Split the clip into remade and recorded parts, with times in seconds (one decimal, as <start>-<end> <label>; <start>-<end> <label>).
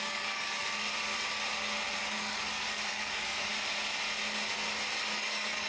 0.0-0.6 remade; 0.6-2.0 recorded; 2.0-3.5 remade; 3.5-5.0 recorded; 5.0-5.7 remade